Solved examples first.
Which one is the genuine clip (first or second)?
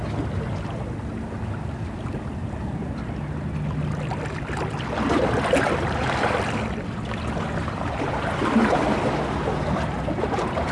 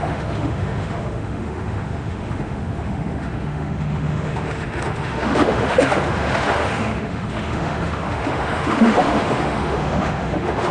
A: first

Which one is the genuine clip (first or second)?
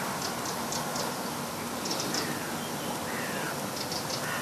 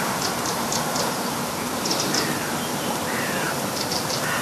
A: first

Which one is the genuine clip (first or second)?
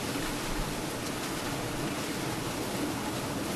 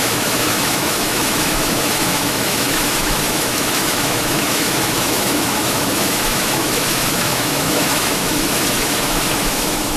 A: first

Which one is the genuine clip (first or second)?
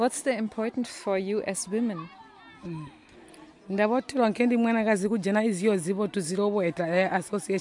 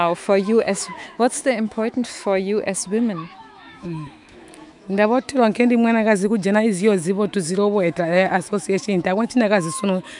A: first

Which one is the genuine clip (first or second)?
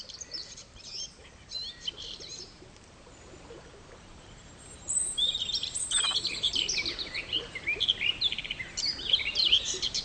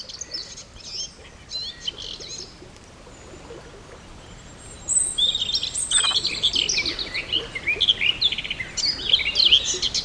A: second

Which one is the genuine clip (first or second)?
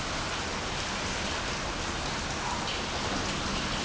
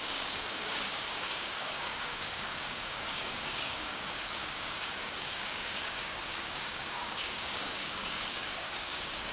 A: first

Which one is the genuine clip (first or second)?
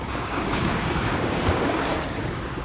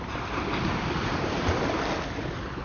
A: second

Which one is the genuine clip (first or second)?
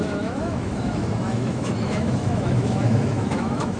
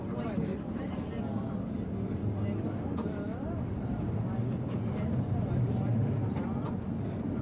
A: second